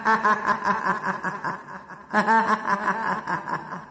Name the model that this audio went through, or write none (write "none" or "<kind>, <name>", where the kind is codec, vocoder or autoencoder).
none